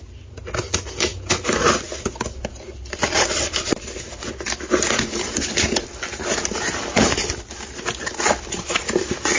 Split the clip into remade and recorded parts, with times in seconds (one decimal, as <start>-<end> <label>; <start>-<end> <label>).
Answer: 0.0-6.1 recorded; 6.1-7.3 remade; 7.3-9.4 recorded